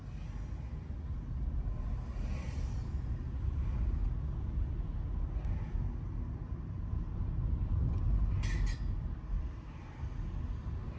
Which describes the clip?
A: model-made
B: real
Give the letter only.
B